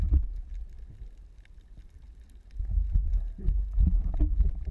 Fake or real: real